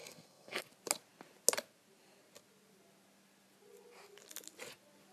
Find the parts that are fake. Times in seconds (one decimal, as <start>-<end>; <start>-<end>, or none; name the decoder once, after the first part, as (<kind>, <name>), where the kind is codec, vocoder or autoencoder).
0.0-0.6 (codec, SNAC)